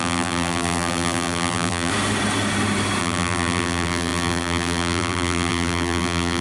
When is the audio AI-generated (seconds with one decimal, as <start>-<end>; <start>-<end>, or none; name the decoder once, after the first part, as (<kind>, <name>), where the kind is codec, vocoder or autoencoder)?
0.0-1.9 (vocoder, BigVGAN v2); 3.0-6.4